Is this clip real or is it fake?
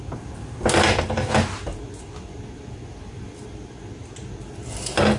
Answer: real